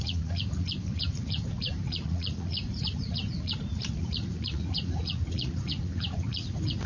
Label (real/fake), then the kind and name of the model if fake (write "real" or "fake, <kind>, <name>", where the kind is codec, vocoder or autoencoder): fake, vocoder, Vocos